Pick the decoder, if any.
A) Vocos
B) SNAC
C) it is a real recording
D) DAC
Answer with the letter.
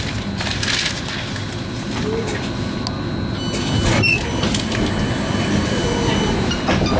C